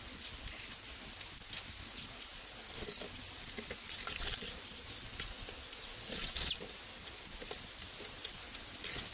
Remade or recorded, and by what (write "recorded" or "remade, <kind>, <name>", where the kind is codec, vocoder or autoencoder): recorded